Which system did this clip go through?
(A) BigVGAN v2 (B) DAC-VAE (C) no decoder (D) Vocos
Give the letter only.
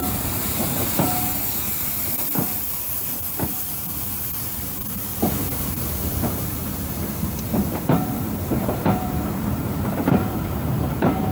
A